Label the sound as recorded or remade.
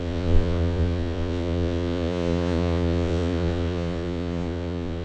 remade